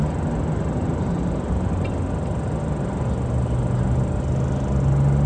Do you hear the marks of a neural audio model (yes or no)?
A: no